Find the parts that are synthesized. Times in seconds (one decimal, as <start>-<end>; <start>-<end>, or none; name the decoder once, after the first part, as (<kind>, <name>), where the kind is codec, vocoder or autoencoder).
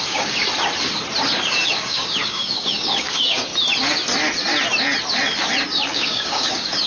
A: 0.0-0.4 (codec, DAC); 1.4-3.5; 5.9-6.9